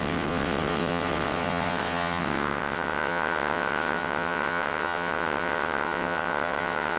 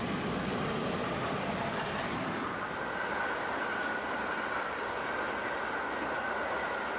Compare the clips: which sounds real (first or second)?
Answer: second